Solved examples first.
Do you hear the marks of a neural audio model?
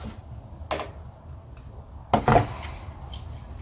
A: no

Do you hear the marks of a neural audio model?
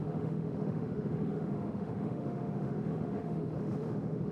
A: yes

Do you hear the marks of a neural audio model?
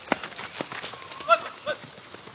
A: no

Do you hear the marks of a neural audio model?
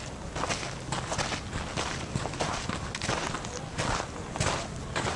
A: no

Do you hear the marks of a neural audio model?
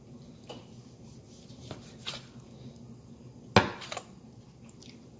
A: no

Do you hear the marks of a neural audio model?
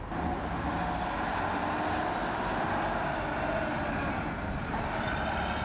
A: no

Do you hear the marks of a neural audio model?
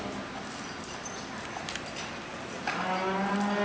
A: no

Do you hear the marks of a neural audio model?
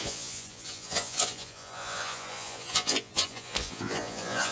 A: yes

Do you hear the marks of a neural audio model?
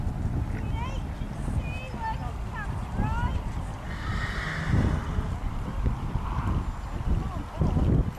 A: no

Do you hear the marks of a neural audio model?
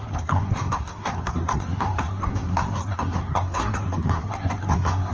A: yes